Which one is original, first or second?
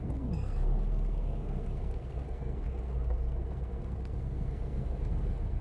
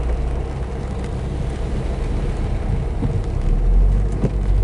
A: second